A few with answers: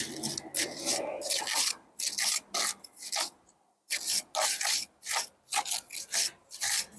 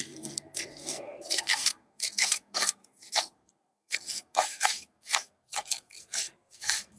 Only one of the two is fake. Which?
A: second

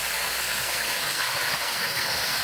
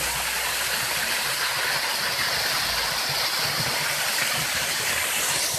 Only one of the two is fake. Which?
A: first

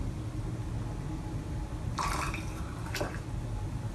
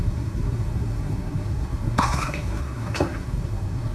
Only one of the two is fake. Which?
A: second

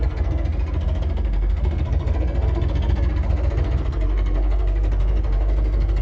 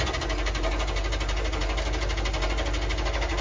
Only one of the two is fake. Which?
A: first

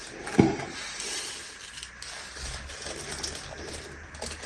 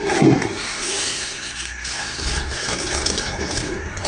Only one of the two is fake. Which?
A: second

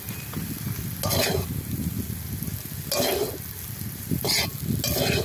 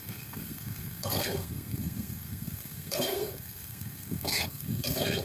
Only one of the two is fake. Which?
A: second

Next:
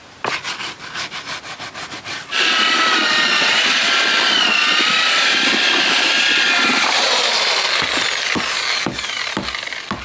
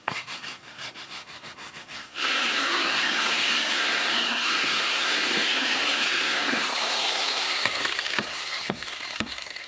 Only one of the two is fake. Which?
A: second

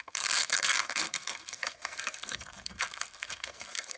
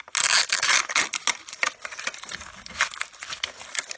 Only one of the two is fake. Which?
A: first